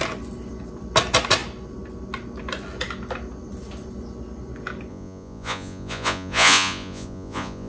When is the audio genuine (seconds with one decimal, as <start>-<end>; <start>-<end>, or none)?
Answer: 0.0-4.9